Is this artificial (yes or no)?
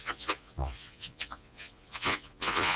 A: yes